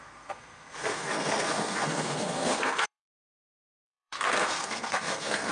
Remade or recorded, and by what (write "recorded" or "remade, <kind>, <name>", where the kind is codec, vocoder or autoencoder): remade, codec, SNAC